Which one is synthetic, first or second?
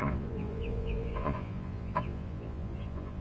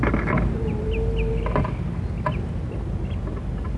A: first